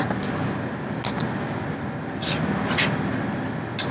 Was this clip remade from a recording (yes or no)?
no